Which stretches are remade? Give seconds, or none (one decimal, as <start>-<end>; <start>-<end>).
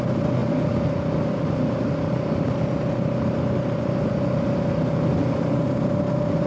none